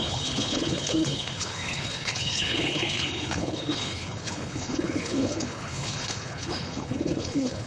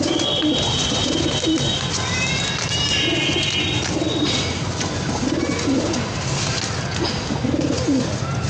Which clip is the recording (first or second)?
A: second